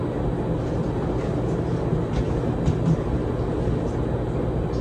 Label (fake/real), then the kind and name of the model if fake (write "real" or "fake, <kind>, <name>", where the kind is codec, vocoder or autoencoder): real